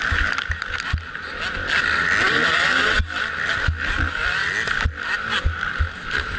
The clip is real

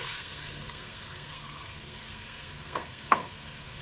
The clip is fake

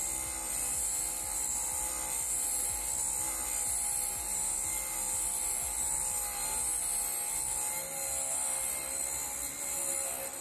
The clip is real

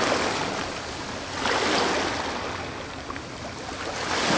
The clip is real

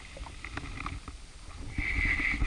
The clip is real